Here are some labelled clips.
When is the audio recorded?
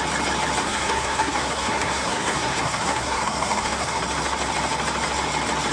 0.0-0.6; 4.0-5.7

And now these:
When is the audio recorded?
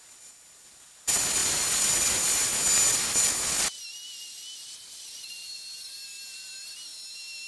0.0-4.8; 6.0-7.5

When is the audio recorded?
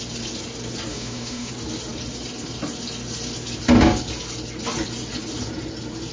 0.0-0.9; 1.5-6.1